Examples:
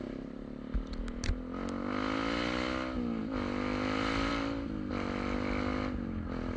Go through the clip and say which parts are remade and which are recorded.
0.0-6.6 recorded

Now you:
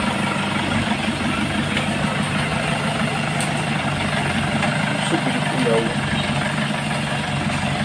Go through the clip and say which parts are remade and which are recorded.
0.0-7.8 recorded

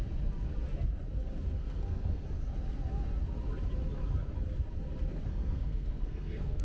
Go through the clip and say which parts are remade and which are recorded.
0.0-1.6 recorded; 1.6-2.2 remade; 2.2-5.3 recorded; 5.3-6.6 remade

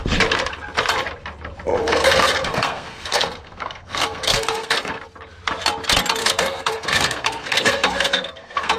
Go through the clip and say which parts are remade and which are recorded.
0.0-1.8 recorded; 1.8-5.0 remade; 5.0-6.2 recorded; 6.2-8.8 remade

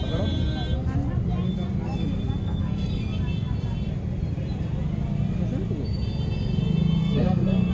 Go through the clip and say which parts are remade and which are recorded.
0.0-2.4 recorded; 2.4-2.9 remade; 2.9-7.0 recorded; 7.0-7.7 remade

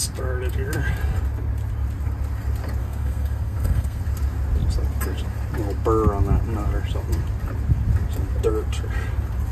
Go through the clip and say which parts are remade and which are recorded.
0.0-2.8 recorded; 2.8-4.0 remade; 4.0-9.5 recorded

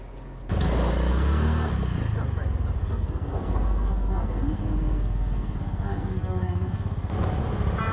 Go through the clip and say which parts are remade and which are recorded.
0.0-1.1 recorded; 1.1-1.7 remade; 1.7-2.8 recorded; 2.8-7.1 remade; 7.1-7.9 recorded